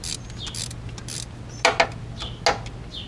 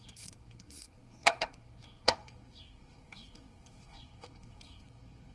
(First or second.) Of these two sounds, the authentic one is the first